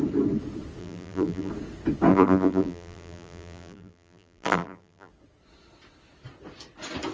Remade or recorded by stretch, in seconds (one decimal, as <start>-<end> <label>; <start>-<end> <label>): 0.0-0.8 recorded; 0.8-1.5 remade; 1.5-2.1 recorded; 2.1-5.1 remade; 5.1-7.1 recorded